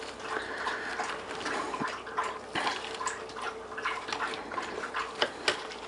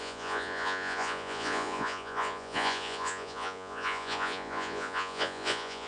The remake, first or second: second